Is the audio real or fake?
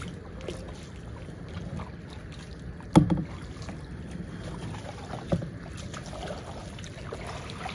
real